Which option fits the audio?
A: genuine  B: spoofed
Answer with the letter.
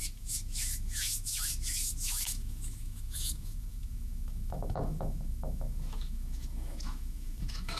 B